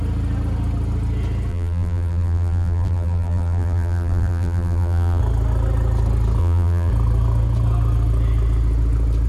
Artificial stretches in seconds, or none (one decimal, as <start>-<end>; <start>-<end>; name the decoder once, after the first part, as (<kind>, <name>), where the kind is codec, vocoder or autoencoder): 1.5-5.2 (vocoder, BigVGAN v2); 6.4-6.9